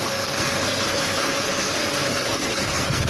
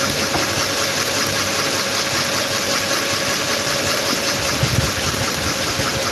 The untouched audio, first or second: second